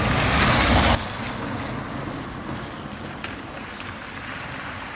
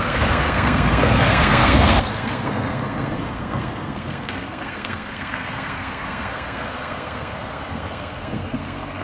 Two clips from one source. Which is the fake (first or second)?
second